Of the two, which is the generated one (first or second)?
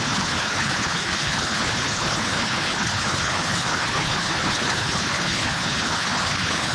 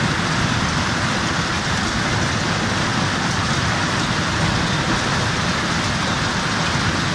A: first